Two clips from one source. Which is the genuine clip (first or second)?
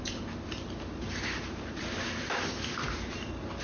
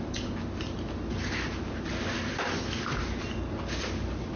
second